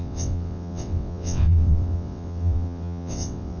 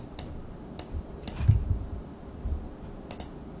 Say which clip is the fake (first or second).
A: first